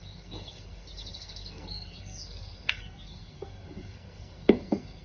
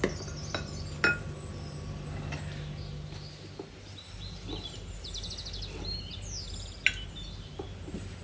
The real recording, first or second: second